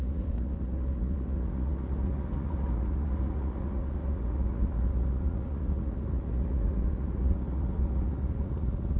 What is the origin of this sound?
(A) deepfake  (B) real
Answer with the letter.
A